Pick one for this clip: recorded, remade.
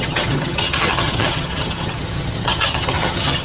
remade